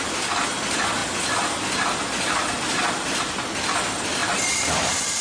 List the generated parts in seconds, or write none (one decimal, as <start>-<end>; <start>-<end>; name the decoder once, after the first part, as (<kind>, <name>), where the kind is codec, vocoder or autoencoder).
4.2-5.2 (vocoder, BigVGAN v2)